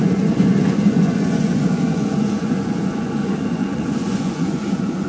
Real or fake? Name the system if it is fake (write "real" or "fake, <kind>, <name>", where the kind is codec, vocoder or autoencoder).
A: fake, vocoder, Vocos